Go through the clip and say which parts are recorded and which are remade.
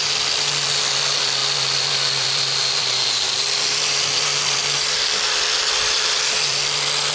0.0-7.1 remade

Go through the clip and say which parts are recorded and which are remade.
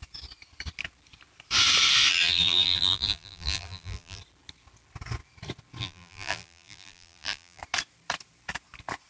0.0-2.1 recorded; 2.1-4.2 remade; 4.2-5.8 recorded; 5.8-7.6 remade; 7.6-9.1 recorded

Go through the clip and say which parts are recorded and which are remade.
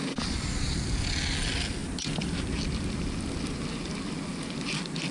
0.0-5.1 recorded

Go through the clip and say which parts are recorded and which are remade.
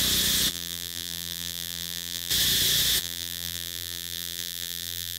0.0-0.5 recorded; 0.5-2.3 remade; 2.3-3.0 recorded; 3.0-5.2 remade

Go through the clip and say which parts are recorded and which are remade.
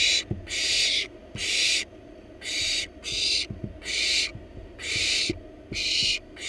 0.0-4.3 recorded; 4.3-4.9 remade; 4.9-6.5 recorded